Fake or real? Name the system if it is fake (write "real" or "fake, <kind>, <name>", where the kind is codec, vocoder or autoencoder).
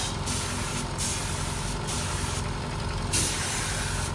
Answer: real